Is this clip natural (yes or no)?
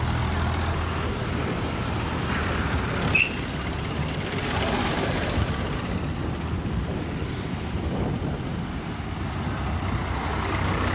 yes